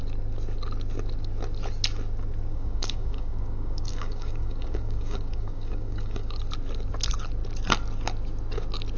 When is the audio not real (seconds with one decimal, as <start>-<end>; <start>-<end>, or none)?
2.5-6.4